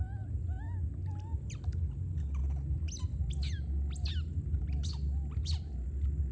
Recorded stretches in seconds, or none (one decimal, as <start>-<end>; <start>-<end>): 0.0-6.3